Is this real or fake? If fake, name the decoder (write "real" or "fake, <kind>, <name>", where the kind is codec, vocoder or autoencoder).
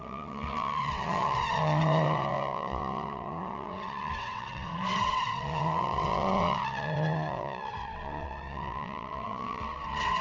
fake, vocoder, WaveNeXt